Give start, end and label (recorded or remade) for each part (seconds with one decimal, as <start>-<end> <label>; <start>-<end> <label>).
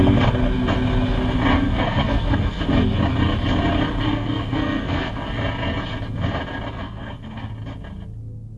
0.0-1.5 recorded; 1.5-2.6 remade; 2.6-4.1 recorded; 4.1-5.1 remade; 5.1-6.8 recorded; 6.8-7.5 remade; 7.5-8.6 recorded